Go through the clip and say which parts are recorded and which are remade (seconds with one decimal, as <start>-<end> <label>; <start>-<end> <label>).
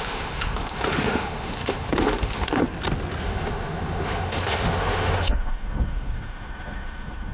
0.0-2.6 remade; 2.6-3.2 recorded; 3.2-7.3 remade